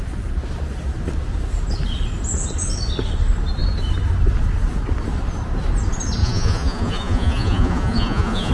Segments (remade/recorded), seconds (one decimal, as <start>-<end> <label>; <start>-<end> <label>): 0.0-6.2 recorded; 6.2-8.5 remade